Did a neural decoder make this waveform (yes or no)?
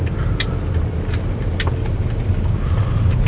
no